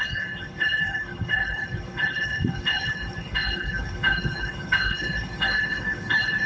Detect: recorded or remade remade